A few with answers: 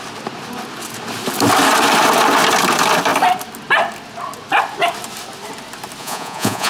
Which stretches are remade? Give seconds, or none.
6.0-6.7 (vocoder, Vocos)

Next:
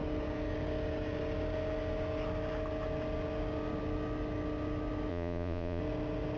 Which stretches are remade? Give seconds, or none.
5.1-5.8 (vocoder, Vocos)

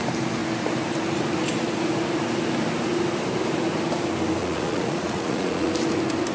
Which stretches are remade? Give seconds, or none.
4.4-5.7 (vocoder, Vocos)

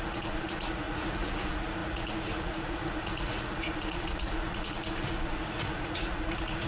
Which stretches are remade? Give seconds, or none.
0.0-6.7 (vocoder, Vocos)

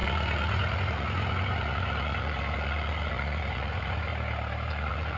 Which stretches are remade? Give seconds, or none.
0.0-4.1 (vocoder, Vocos); 4.7-5.2

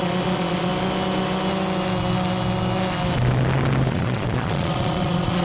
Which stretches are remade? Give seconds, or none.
0.0-0.7 (vocoder, Vocos); 3.9-5.4

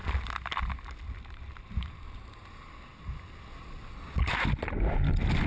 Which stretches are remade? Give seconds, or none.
none